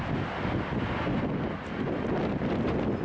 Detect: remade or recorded recorded